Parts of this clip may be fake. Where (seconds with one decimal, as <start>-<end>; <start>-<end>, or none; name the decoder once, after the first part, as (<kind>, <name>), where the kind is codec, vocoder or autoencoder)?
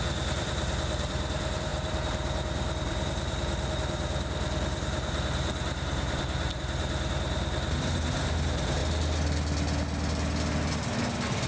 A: 0.0-8.8 (vocoder, BigVGAN v2)